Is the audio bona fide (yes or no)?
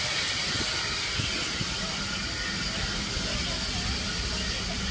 yes